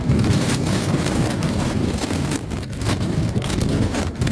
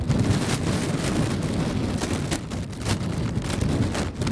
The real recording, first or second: second